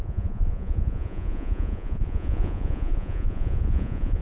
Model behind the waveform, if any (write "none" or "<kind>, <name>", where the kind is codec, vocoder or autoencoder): vocoder, Vocos